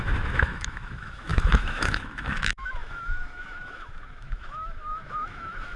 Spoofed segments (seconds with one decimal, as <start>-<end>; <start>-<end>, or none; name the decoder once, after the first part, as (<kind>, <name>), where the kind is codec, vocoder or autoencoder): 0.0-5.8 (autoencoder, DAC-VAE)

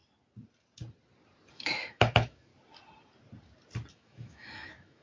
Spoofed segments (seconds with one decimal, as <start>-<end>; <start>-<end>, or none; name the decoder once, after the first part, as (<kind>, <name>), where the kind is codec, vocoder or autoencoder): 1.5-2.5 (autoencoder, DAC-VAE); 3.9-5.0

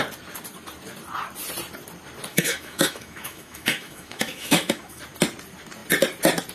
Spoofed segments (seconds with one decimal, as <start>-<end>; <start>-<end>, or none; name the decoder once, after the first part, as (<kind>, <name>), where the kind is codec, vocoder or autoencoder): 2.3-5.0 (autoencoder, DAC-VAE)